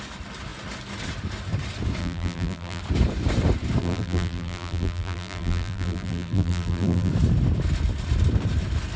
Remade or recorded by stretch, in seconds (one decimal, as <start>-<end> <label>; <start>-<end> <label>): 0.0-2.0 recorded; 2.0-2.8 remade; 2.8-3.8 recorded; 3.8-7.1 remade; 7.1-9.0 recorded